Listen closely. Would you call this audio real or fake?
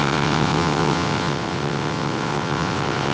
fake